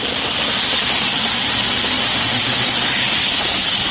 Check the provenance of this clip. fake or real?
real